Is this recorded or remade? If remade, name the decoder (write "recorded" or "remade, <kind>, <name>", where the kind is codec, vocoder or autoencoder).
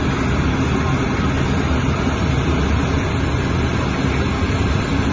recorded